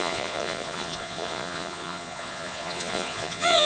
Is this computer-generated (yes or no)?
yes